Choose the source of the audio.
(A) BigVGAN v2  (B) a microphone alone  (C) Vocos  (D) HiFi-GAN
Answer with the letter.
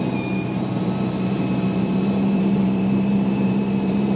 A